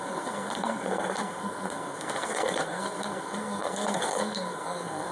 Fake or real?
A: fake